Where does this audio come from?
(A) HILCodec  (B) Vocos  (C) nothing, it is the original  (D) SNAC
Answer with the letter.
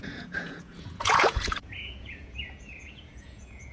B